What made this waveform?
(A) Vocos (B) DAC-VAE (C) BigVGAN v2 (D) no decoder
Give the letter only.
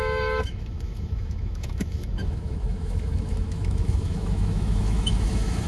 B